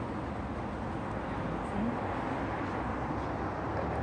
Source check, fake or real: real